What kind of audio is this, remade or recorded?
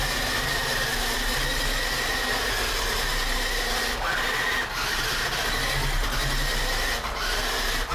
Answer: recorded